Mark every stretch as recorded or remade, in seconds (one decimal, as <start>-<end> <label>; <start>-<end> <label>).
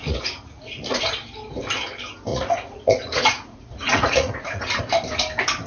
0.0-1.0 remade; 1.0-2.3 recorded; 2.3-4.8 remade; 4.8-5.7 recorded